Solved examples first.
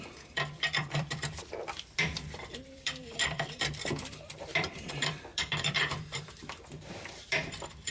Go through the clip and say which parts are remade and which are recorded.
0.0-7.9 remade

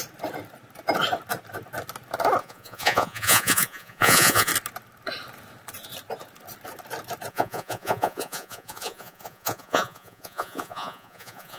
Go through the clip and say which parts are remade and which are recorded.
0.0-2.4 recorded; 2.4-4.5 remade; 4.5-7.3 recorded; 7.3-11.6 remade

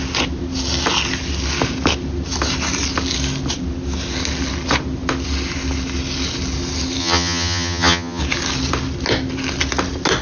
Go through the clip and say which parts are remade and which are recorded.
0.0-7.0 recorded; 7.0-8.2 remade; 8.2-10.2 recorded

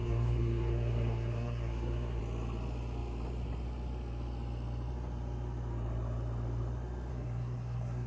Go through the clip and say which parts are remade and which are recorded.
0.0-2.2 remade; 2.2-7.1 recorded; 7.1-8.1 remade

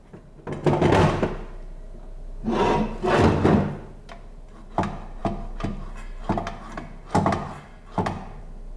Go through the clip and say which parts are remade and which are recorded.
0.0-8.8 recorded

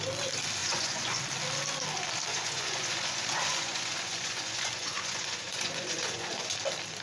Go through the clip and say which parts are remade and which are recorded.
0.0-0.6 recorded; 0.6-1.2 remade; 1.2-2.3 recorded; 2.3-6.5 remade; 6.5-7.0 recorded